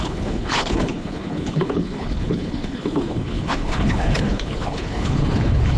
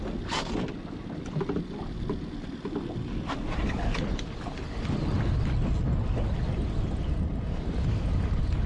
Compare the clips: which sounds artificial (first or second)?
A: first